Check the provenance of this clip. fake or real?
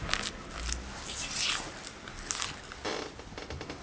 real